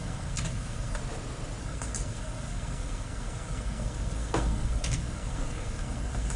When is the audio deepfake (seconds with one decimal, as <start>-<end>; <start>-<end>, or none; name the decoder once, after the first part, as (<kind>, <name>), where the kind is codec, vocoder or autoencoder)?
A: 0.0-1.0 (codec, SNAC); 1.6-6.4